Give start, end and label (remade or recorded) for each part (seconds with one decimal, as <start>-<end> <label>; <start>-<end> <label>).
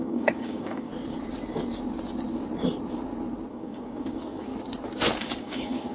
0.0-0.9 remade; 0.9-3.5 recorded; 3.5-4.5 remade; 4.5-5.2 recorded; 5.2-5.9 remade